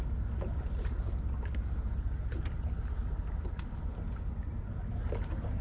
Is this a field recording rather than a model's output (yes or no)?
yes